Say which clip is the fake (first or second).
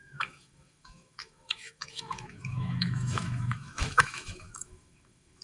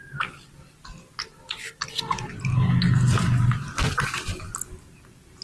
first